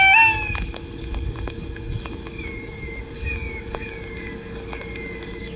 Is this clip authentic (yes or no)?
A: no